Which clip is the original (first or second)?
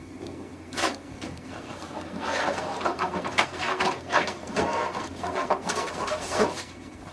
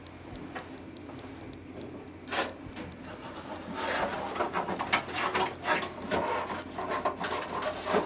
second